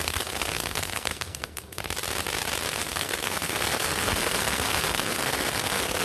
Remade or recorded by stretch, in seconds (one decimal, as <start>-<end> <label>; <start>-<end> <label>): 0.0-1.8 remade; 1.8-2.7 recorded; 2.7-6.0 remade